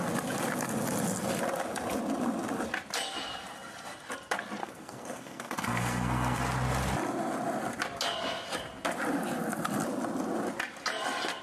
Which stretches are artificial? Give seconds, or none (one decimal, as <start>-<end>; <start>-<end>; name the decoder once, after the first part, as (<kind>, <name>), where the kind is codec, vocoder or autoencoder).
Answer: 4.6-6.4 (codec, SNAC)